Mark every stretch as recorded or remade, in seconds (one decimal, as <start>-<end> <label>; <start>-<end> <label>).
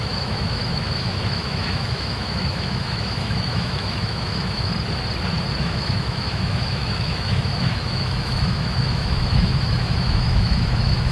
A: 0.0-4.7 remade; 4.7-5.6 recorded; 5.6-11.1 remade